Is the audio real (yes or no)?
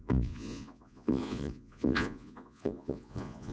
no